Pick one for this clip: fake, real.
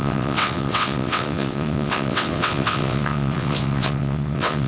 fake